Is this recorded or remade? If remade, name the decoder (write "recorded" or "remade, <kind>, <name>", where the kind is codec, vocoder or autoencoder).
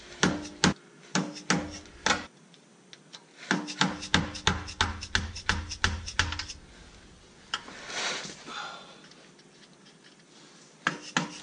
recorded